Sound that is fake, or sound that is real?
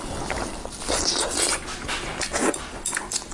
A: real